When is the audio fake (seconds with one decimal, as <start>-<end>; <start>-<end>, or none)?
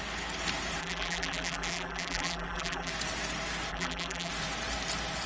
0.8-2.9; 3.7-4.3